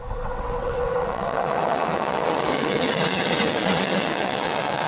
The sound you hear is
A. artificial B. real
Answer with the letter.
A